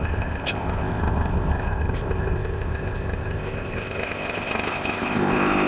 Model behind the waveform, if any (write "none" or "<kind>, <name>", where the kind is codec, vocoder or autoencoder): codec, ZipCodec